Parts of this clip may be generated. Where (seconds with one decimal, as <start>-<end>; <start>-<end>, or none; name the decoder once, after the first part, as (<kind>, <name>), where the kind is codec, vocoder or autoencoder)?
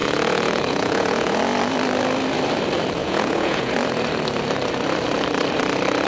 0.0-1.4 (vocoder, Vocos); 3.0-3.7